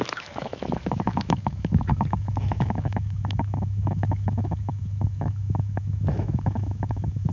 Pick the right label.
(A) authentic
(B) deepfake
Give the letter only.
B